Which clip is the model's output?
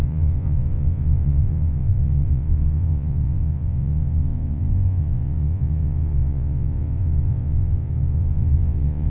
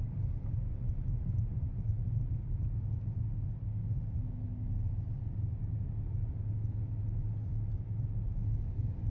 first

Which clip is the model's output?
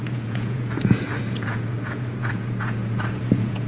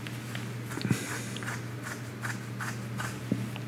first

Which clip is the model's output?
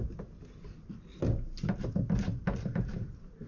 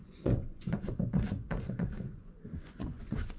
second